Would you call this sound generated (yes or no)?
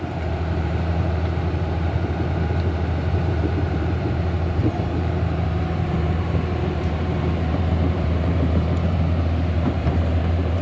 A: yes